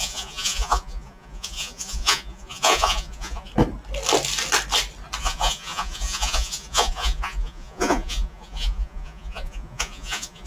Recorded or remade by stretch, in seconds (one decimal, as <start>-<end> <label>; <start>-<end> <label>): 0.0-3.5 remade; 3.5-5.2 recorded; 5.2-10.5 remade